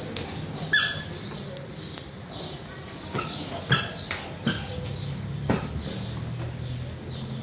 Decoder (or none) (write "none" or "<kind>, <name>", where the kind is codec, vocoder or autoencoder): none